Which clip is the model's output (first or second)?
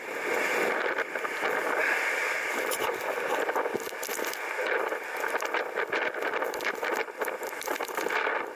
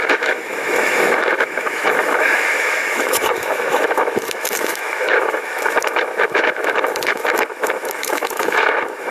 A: second